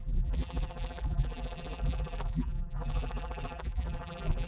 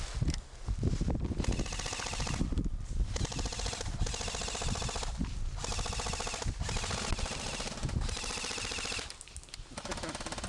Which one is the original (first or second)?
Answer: second